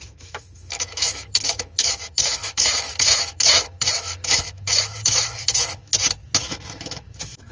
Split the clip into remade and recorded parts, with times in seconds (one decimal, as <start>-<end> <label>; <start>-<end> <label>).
0.0-5.9 remade; 5.9-6.4 recorded; 6.4-7.5 remade